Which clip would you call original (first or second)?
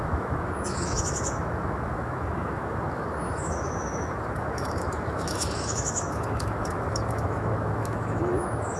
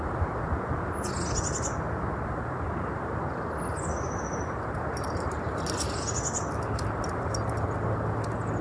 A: second